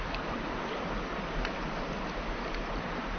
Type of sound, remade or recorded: recorded